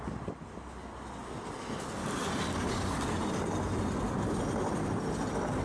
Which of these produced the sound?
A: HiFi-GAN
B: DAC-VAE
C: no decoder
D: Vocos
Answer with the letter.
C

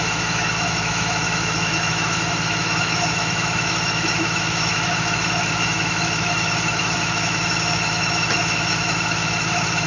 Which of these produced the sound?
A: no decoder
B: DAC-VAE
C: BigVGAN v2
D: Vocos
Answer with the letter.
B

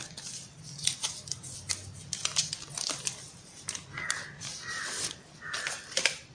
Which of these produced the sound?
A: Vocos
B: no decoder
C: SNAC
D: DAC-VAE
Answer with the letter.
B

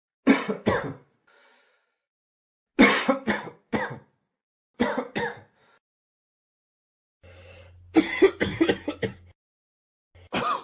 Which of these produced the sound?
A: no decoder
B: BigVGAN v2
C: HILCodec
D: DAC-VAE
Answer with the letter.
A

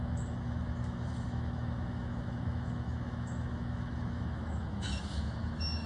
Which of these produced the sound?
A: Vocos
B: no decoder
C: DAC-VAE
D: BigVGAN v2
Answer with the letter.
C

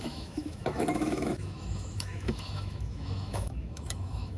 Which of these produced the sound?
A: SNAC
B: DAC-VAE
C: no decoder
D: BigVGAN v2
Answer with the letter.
B